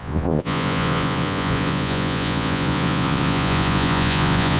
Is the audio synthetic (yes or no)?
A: yes